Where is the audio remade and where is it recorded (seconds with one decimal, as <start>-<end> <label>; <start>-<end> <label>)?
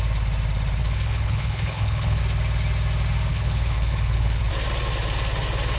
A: 0.0-0.8 recorded; 0.8-2.2 remade; 2.2-3.3 recorded; 3.3-4.4 remade; 4.4-5.8 recorded